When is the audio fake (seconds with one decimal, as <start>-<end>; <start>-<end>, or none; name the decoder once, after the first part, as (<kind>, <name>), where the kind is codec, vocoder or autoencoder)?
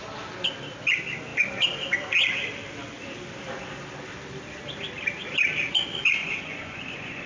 6.2-7.3 (vocoder, Vocos)